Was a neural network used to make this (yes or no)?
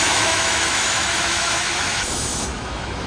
yes